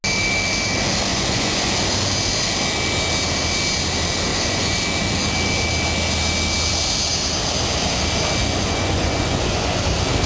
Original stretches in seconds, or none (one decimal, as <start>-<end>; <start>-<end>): 0.0-1.1; 1.7-4.3; 4.8-8.4; 9.8-10.3